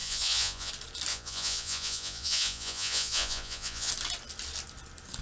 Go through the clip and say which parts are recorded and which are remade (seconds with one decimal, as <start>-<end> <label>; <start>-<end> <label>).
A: 0.0-0.7 remade; 0.7-1.1 recorded; 1.1-3.9 remade; 3.9-5.2 recorded